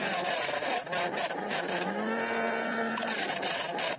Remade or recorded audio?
recorded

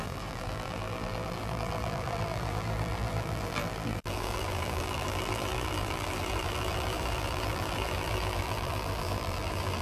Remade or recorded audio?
remade